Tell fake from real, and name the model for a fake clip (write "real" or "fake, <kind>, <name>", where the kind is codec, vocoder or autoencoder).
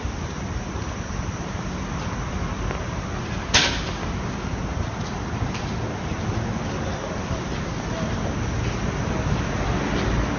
real